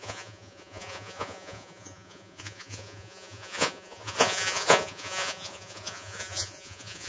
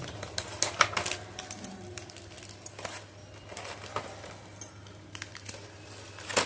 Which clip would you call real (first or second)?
second